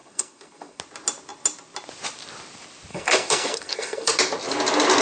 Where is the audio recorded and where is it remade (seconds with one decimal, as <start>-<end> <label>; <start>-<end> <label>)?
0.0-0.8 remade; 0.8-2.9 recorded; 2.9-4.1 remade; 4.1-5.0 recorded